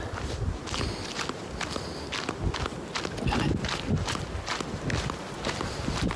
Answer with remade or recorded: recorded